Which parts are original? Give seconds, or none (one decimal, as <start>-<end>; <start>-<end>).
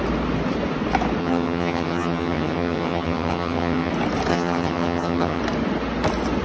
0.0-1.2; 3.9-4.3; 5.4-6.4